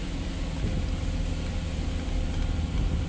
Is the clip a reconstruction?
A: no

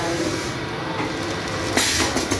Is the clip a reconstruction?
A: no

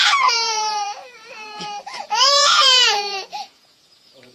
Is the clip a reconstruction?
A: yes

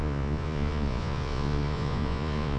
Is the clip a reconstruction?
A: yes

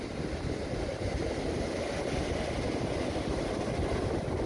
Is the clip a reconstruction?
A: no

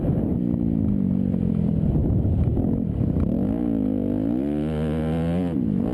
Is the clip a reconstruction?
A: no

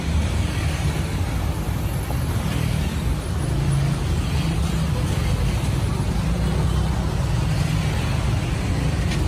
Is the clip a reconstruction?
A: no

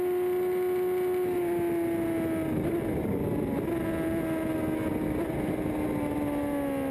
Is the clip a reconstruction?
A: no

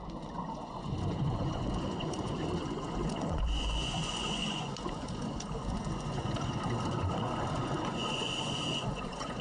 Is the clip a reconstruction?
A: yes